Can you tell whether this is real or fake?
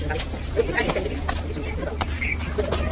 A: real